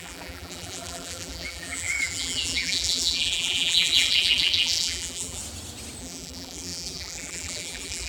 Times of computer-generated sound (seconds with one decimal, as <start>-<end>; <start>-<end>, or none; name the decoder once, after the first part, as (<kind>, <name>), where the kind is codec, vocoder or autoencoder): 0.0-5.4 (vocoder, BigVGAN v2); 6.0-8.1